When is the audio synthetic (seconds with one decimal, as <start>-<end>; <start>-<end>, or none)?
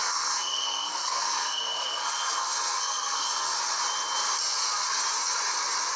0.0-3.6